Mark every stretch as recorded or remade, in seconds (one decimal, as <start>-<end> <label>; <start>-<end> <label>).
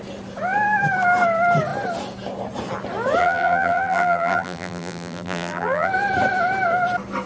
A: 0.0-3.2 recorded; 3.2-5.9 remade; 5.9-7.3 recorded